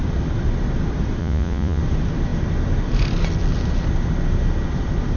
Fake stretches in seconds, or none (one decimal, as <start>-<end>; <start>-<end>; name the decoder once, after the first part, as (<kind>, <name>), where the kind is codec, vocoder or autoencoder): 1.2-1.8 (vocoder, Vocos)